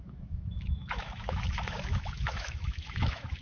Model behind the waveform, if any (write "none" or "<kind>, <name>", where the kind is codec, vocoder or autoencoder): autoencoder, DAC-VAE